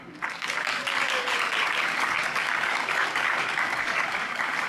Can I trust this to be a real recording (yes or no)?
no